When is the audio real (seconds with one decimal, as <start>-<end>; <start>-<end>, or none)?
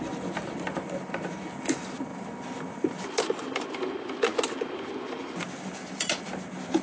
0.0-6.8